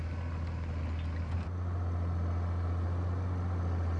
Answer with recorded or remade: recorded